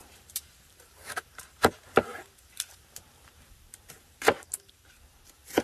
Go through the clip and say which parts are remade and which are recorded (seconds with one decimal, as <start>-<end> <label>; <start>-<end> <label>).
0.0-5.6 remade